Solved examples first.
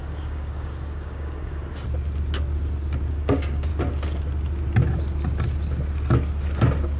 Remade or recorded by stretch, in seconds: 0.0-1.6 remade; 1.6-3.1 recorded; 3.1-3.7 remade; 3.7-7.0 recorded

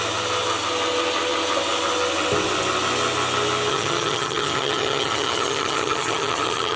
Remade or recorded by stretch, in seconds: 0.0-3.7 recorded; 3.7-6.8 remade

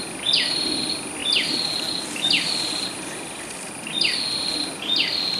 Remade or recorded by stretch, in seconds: 0.0-5.4 recorded

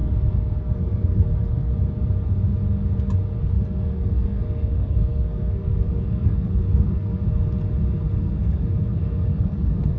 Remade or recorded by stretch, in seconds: 0.0-1.7 remade; 1.7-3.4 recorded; 3.4-7.2 remade; 7.2-8.2 recorded; 8.2-10.0 remade